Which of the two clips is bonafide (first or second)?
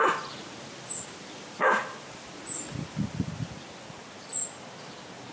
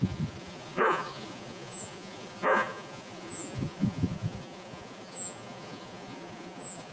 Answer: first